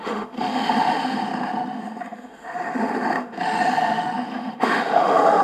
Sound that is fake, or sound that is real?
fake